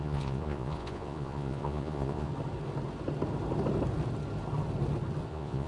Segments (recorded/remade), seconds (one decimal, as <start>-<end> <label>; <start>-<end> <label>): 0.0-2.3 remade; 2.3-5.3 recorded; 5.3-5.7 remade